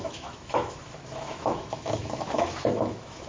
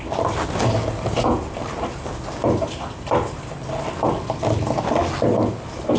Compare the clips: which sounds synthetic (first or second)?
first